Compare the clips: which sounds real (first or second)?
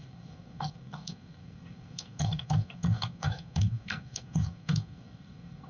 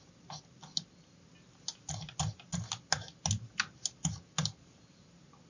second